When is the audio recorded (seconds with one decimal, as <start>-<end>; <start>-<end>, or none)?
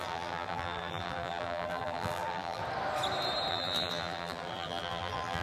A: 2.6-3.5